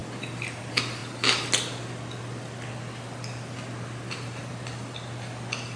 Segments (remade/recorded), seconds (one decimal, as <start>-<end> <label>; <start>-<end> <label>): 0.0-5.8 recorded